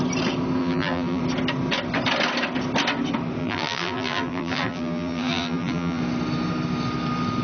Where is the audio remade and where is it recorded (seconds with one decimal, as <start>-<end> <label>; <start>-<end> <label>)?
0.0-0.6 recorded; 0.6-1.2 remade; 1.2-3.4 recorded; 3.4-6.0 remade; 6.0-7.4 recorded